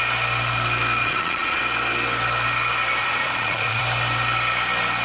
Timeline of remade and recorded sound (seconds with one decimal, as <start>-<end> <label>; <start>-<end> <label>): 0.0-1.0 recorded; 1.0-1.6 remade; 1.6-3.0 recorded; 3.0-3.8 remade; 3.8-5.0 recorded